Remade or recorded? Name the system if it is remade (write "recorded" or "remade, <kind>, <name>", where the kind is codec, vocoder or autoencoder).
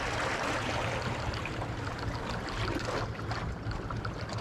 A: recorded